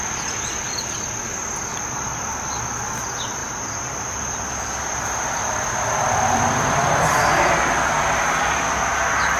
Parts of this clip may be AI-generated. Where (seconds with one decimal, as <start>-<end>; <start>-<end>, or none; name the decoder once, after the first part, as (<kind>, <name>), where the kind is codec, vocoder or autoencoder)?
1.7-2.4 (vocoder, BigVGAN v2)